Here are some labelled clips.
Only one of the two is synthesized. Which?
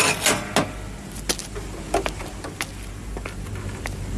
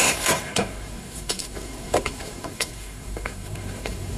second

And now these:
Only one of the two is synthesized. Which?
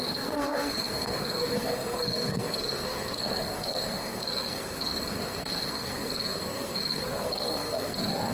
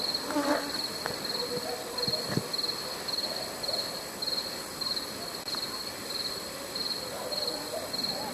first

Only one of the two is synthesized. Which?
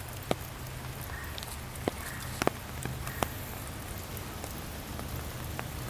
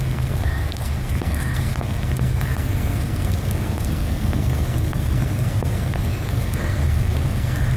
second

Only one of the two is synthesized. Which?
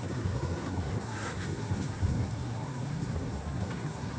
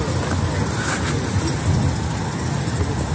first